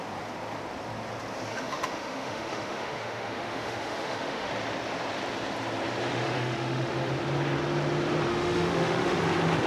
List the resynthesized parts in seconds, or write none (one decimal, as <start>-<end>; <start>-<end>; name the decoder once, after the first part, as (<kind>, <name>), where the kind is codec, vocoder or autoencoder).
1.5-4.5 (autoencoder, DAC-VAE); 6.1-7.1; 8.3-9.2

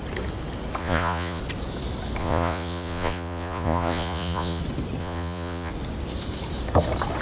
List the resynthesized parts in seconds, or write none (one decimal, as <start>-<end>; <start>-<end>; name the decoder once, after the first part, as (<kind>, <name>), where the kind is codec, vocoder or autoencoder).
0.8-1.4 (vocoder, Vocos); 2.2-4.6; 5.0-5.7

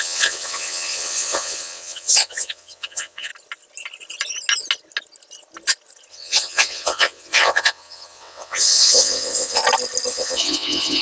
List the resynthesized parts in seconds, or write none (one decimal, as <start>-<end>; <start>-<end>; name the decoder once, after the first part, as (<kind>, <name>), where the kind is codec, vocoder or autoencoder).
0.0-3.3 (vocoder, WaveNeXt); 6.1-9.6; 10.1-11.0